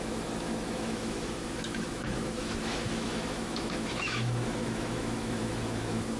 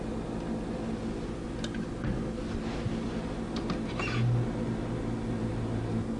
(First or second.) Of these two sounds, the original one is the second